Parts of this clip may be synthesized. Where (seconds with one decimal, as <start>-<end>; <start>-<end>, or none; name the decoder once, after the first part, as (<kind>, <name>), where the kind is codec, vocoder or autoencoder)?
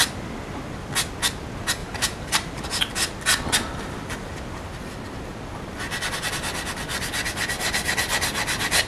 1.8-2.9 (vocoder, BigVGAN v2)